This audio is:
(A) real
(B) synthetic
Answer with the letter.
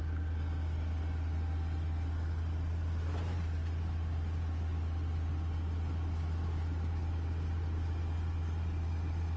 A